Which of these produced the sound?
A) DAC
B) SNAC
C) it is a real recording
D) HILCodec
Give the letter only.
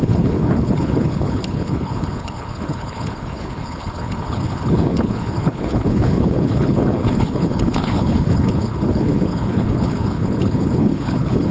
D